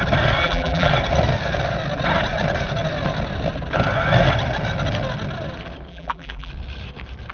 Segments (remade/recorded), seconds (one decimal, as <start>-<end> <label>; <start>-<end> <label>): 0.0-0.4 recorded; 0.4-0.9 remade; 0.9-5.9 recorded; 5.9-6.5 remade; 6.5-7.3 recorded